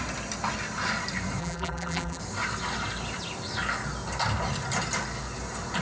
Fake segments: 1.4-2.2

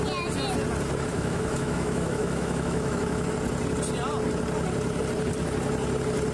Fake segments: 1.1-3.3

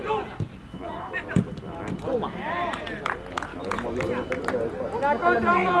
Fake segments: none

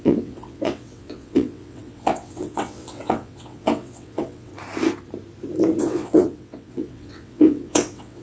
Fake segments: 0.0-4.5; 5.8-8.2